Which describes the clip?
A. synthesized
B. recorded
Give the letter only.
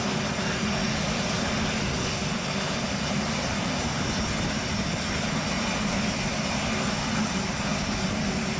B